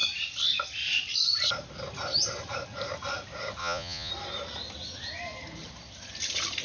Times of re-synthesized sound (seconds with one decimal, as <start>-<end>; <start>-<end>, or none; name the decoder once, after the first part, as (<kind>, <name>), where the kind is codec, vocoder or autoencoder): 3.6-4.1 (vocoder, Vocos)